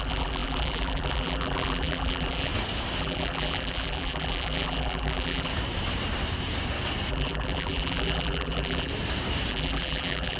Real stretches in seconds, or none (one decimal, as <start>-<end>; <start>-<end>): 2.5-3.0; 5.5-7.1; 8.9-9.5